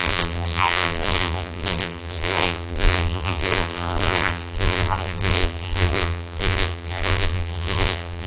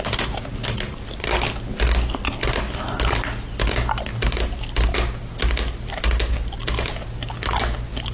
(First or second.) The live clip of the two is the second